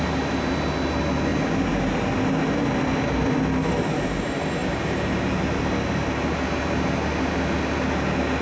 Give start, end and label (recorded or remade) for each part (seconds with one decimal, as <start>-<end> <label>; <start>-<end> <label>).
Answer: 0.0-8.4 recorded